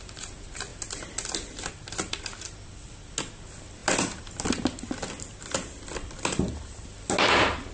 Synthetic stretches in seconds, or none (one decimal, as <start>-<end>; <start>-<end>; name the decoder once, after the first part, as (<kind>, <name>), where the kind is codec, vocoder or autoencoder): none

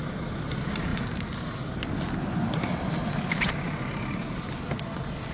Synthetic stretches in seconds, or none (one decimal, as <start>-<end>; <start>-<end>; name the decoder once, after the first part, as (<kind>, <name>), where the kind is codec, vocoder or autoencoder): none

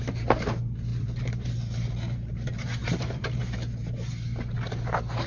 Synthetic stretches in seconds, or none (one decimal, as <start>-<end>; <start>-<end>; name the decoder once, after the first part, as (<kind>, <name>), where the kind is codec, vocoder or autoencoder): 0.9-1.5 (vocoder, BigVGAN v2); 2.8-3.4

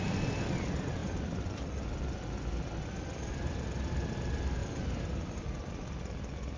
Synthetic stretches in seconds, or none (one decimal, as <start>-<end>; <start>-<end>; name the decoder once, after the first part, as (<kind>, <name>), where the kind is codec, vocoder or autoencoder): 0.0-4.6 (vocoder, BigVGAN v2); 5.7-6.6

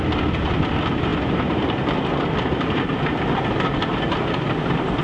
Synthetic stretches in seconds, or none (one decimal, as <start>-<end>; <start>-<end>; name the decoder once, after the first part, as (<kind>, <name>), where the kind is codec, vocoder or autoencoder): none

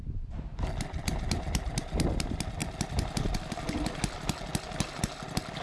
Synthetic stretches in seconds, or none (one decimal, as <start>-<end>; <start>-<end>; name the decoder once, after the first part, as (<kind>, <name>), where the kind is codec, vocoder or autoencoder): none

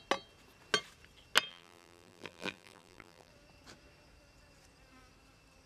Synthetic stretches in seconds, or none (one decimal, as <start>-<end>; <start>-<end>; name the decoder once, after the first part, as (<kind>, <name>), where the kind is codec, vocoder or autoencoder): 1.5-3.3 (vocoder, BigVGAN v2)

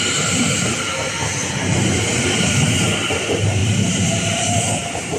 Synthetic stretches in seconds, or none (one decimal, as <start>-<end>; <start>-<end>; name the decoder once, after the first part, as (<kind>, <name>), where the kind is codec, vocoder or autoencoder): 3.6-4.6 (vocoder, BigVGAN v2)